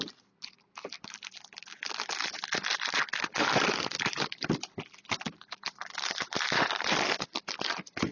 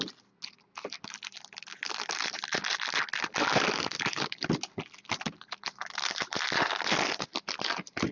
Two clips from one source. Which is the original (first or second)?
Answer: second